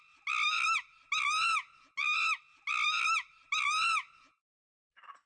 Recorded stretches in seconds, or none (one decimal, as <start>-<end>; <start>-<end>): 0.0-5.3